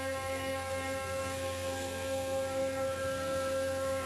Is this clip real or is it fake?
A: fake